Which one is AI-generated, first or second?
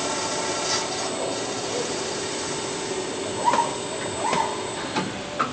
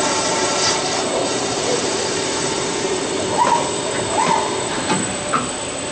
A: second